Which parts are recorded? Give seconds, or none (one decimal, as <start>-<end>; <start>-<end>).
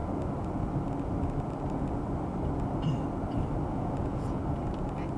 0.0-3.7; 4.4-5.2